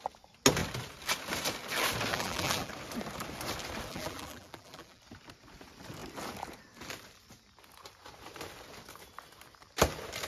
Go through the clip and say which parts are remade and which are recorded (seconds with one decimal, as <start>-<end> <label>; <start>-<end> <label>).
0.0-2.1 recorded; 2.1-2.7 remade; 2.7-3.9 recorded; 3.9-5.0 remade; 5.0-10.3 recorded

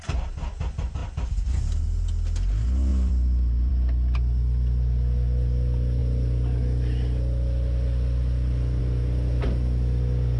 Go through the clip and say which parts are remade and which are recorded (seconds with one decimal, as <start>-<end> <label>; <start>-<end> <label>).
0.0-1.0 recorded; 1.0-1.8 remade; 1.8-2.9 recorded; 2.9-3.7 remade; 3.7-6.0 recorded; 6.0-8.8 remade; 8.8-10.4 recorded

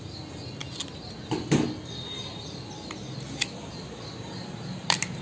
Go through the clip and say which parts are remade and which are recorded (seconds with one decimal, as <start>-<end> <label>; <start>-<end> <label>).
0.0-5.2 recorded

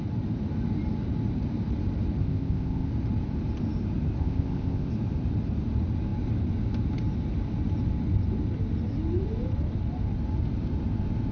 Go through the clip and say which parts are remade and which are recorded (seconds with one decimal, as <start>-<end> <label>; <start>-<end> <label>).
0.0-2.2 recorded; 2.2-2.9 remade; 2.9-4.2 recorded; 4.2-4.9 remade; 4.9-11.3 recorded

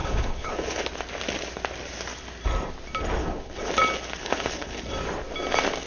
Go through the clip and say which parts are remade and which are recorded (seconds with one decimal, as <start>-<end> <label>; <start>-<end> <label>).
0.0-0.8 remade; 0.8-3.2 recorded; 3.2-3.7 remade; 3.7-4.2 recorded; 4.2-4.8 remade; 4.8-5.9 recorded

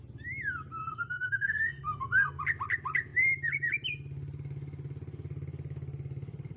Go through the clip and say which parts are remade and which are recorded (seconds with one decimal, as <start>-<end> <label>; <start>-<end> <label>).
0.0-0.8 recorded; 0.8-2.4 remade; 2.4-6.6 recorded